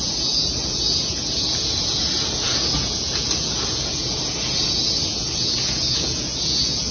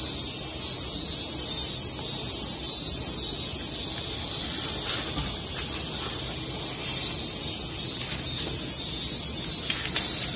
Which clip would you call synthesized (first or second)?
first